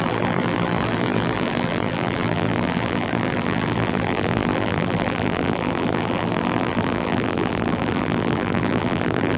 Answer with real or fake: fake